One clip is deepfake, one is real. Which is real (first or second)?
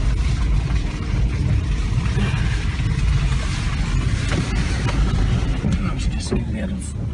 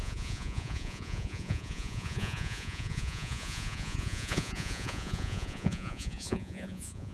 first